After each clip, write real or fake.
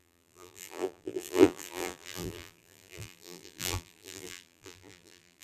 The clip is fake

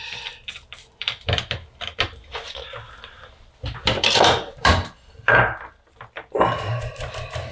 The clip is fake